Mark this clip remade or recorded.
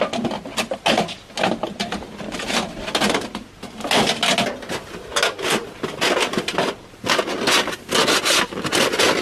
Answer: recorded